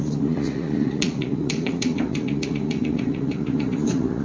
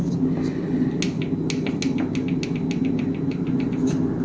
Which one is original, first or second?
second